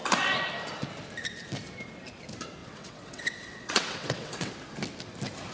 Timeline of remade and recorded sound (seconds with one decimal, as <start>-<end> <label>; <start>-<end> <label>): 0.0-2.6 recorded; 2.6-4.5 remade; 4.5-5.5 recorded